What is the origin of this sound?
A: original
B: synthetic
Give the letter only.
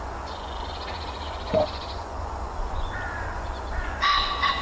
B